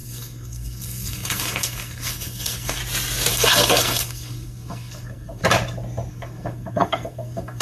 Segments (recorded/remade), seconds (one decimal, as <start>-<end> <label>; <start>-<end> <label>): 0.0-2.8 remade; 2.8-3.3 recorded; 3.3-5.4 remade; 5.4-6.1 recorded; 6.1-7.6 remade